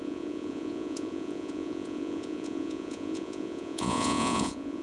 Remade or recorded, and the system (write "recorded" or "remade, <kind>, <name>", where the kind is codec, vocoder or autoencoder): remade, vocoder, Vocos